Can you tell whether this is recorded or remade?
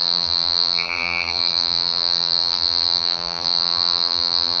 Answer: remade